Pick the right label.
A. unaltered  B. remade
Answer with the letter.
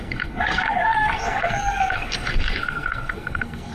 B